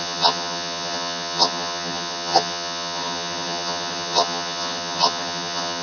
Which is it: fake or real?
fake